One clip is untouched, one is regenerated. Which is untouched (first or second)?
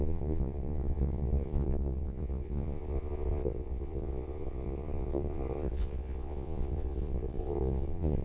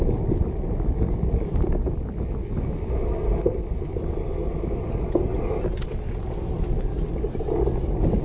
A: second